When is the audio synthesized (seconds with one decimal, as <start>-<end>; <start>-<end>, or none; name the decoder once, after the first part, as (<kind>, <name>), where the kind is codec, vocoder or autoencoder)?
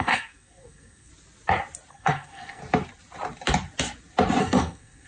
0.0-1.1 (codec, SNAC); 1.9-2.6; 4.4-5.1